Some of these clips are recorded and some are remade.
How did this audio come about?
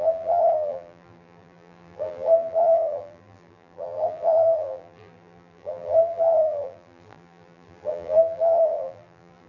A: remade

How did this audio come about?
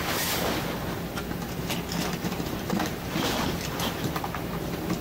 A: recorded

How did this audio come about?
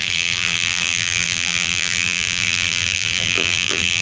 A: remade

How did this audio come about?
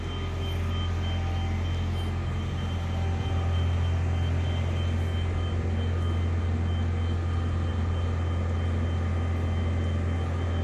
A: recorded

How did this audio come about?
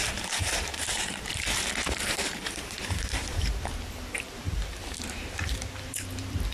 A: remade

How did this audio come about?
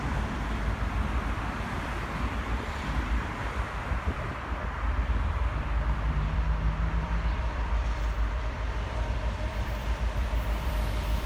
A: remade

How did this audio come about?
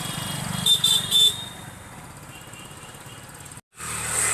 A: recorded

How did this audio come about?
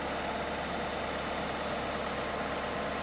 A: recorded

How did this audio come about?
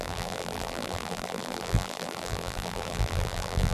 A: remade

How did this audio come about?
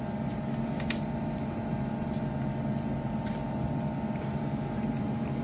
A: recorded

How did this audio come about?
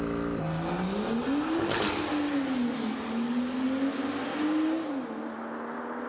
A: recorded